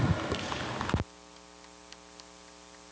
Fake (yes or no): no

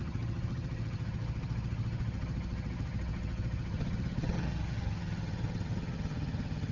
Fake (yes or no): yes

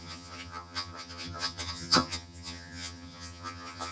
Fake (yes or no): yes